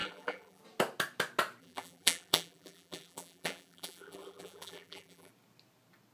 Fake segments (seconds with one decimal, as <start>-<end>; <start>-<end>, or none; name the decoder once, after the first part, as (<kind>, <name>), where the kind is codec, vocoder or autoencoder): 0.0-0.6 (vocoder, BigVGAN v2); 1.6-5.3